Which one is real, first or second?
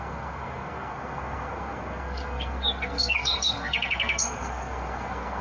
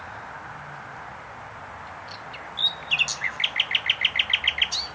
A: second